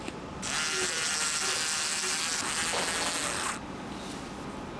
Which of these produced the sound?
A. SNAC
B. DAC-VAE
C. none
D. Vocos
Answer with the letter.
C